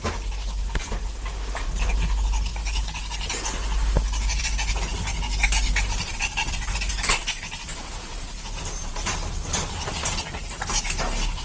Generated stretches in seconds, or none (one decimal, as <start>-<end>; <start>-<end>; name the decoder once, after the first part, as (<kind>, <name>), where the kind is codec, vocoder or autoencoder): none